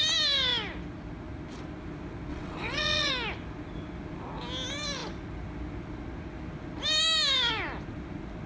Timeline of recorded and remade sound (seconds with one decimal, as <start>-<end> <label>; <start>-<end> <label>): 0.0-2.3 recorded; 2.3-3.1 remade; 3.1-8.5 recorded